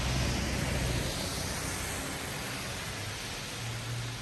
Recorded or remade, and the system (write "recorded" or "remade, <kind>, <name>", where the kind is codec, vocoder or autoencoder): recorded